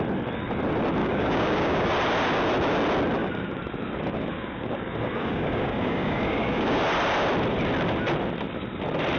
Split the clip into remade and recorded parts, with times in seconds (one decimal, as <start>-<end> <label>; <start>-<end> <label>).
0.0-1.0 recorded; 1.0-1.9 remade; 1.9-3.2 recorded; 3.2-6.8 remade; 6.8-9.2 recorded